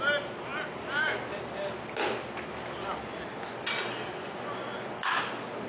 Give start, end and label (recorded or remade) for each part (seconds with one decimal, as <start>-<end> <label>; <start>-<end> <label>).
0.0-4.2 recorded; 4.2-5.1 remade; 5.1-5.7 recorded